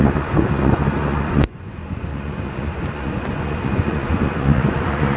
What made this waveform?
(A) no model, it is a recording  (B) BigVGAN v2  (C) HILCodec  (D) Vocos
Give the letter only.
D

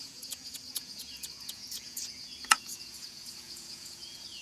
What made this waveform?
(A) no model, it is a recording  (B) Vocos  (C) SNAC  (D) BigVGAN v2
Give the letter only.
B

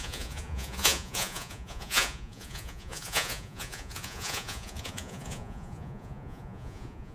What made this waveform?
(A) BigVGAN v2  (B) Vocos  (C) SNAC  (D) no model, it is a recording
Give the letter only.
B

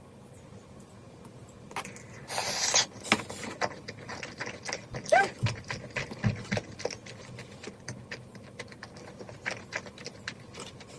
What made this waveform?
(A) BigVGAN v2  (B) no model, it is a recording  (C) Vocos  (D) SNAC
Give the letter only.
B